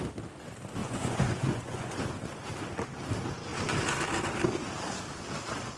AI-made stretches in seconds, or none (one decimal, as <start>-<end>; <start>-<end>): 0.8-2.0